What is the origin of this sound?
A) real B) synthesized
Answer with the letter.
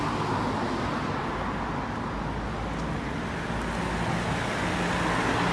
A